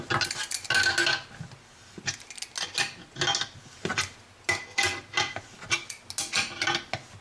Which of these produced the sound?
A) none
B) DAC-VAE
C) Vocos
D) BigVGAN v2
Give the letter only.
A